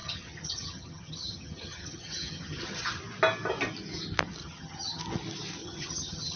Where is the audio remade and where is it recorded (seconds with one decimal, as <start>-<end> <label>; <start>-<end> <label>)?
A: 0.0-3.0 remade; 3.0-4.4 recorded; 4.4-5.0 remade; 5.0-5.6 recorded; 5.6-6.4 remade